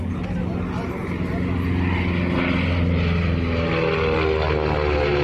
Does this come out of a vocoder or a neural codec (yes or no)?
no